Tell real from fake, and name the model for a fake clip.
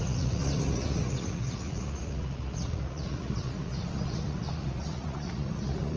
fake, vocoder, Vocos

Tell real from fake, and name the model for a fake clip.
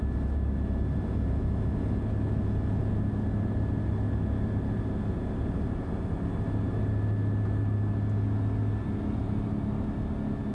real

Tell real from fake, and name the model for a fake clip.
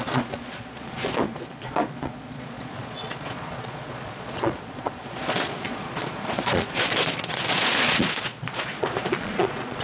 fake, vocoder, Vocos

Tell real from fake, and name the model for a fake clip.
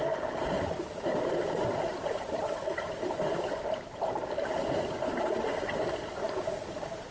real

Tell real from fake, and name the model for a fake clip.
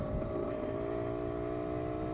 real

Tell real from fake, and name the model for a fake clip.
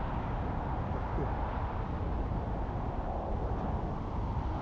real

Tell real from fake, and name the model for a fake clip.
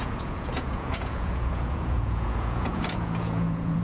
fake, vocoder, Vocos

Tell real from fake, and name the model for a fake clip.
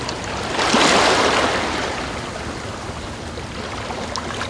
real